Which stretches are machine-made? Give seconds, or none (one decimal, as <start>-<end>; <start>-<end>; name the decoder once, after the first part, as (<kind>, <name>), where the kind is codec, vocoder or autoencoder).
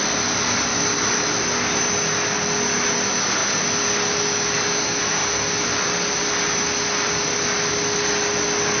5.2-7.7 (vocoder, BigVGAN v2)